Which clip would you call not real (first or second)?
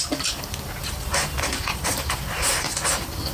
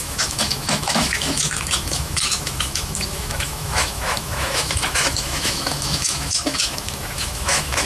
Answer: second